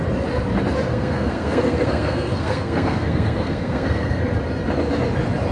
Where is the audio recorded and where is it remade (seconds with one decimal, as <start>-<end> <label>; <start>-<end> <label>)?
0.0-0.9 recorded; 0.9-4.2 remade; 4.2-5.5 recorded

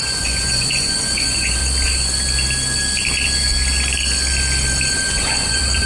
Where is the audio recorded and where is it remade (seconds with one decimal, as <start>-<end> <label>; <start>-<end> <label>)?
0.0-1.6 remade; 1.6-4.9 recorded; 4.9-5.9 remade